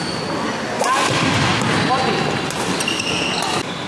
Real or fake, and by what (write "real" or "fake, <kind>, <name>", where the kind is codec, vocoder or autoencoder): real